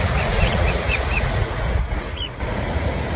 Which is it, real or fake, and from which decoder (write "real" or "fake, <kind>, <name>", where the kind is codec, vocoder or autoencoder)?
fake, vocoder, Vocos